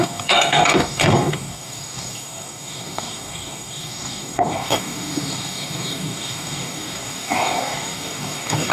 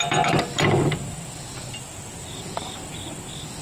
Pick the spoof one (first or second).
first